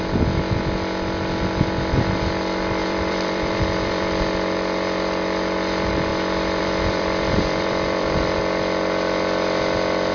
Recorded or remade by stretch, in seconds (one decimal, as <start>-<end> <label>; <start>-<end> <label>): 0.0-2.8 recorded; 2.8-4.2 remade; 4.2-6.1 recorded; 6.1-8.4 remade; 8.4-10.1 recorded